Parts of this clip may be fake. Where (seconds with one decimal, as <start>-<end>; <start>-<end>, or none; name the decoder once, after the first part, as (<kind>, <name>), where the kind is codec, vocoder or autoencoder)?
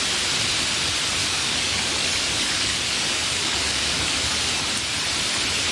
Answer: 1.2-4.6 (codec, DAC)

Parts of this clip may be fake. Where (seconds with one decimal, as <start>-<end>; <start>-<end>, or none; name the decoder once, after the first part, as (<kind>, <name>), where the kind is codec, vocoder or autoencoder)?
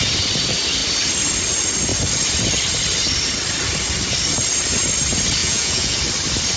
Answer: 5.4-6.0 (vocoder, Vocos)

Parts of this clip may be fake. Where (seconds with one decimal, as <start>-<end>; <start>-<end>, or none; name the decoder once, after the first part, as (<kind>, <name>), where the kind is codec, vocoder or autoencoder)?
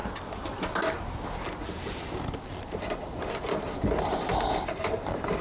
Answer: none